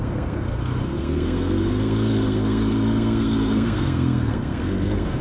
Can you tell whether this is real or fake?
fake